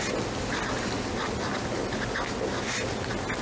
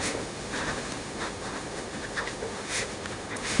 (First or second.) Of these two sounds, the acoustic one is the first